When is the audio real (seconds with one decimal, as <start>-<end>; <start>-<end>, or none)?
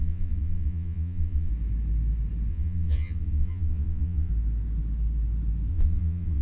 1.5-2.5; 4.3-5.7